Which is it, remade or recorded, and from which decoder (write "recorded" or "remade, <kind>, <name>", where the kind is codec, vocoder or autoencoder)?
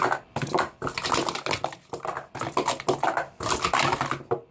recorded